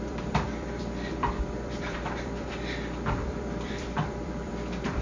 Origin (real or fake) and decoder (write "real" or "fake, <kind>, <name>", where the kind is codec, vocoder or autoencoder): fake, vocoder, BigVGAN v2